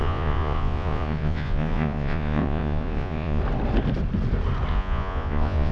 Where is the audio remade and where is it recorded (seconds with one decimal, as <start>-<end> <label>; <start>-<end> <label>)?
0.0-3.4 remade; 3.4-4.7 recorded; 4.7-5.7 remade